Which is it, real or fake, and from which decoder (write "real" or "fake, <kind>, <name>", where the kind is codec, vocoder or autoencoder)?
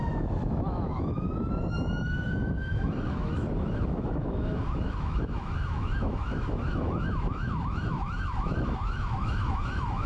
fake, autoencoder, DAC-VAE